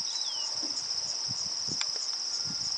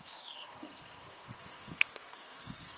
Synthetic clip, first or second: second